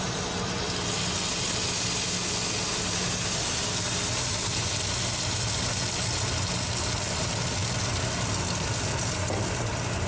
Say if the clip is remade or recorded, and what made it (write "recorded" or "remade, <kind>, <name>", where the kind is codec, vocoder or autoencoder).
recorded